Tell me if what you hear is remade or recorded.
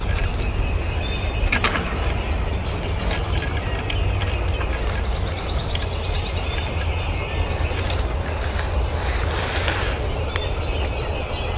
recorded